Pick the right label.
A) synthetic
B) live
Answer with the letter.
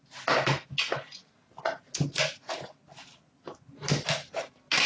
B